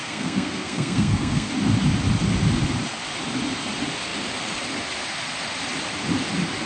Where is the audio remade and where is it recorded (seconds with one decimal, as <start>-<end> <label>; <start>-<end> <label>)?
0.0-1.5 remade; 1.5-6.7 recorded